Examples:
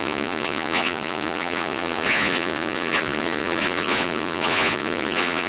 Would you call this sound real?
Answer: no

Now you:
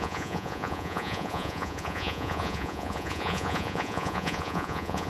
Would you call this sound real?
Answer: no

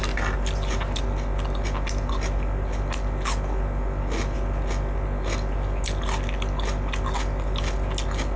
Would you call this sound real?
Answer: yes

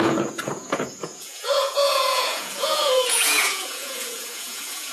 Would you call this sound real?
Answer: no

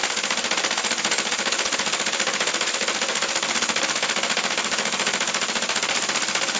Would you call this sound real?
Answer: yes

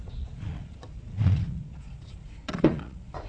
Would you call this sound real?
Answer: no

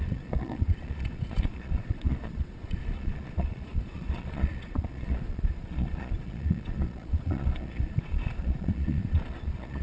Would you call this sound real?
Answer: no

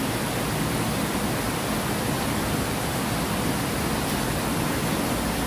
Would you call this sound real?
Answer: yes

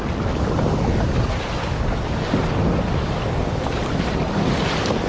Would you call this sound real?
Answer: yes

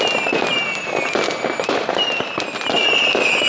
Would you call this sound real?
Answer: yes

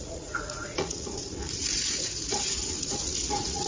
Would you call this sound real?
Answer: no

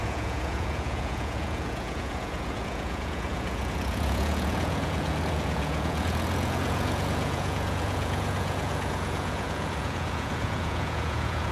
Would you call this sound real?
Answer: no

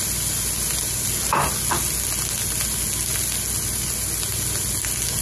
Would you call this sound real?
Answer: yes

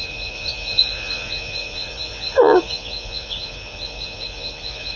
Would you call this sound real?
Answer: no